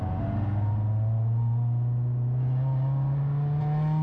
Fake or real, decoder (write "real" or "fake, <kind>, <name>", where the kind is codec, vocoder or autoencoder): real